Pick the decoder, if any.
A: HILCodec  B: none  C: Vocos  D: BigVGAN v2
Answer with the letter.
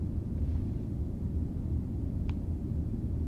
D